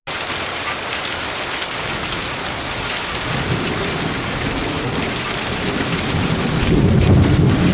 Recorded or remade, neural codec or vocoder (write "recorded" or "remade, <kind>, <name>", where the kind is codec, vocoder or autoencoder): recorded